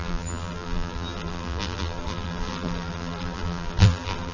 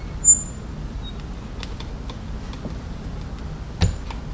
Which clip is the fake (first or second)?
first